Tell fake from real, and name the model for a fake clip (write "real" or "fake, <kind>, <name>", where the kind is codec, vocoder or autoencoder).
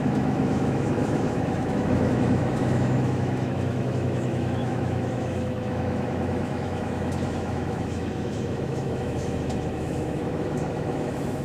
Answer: fake, autoencoder, DAC-VAE